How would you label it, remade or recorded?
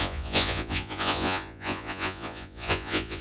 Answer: remade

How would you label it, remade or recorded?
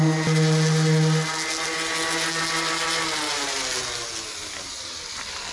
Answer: recorded